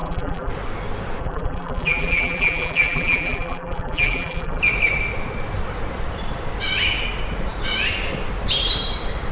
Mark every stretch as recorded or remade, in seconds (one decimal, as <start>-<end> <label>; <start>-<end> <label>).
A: 0.0-0.5 remade; 0.5-1.2 recorded; 1.2-4.6 remade; 4.6-9.3 recorded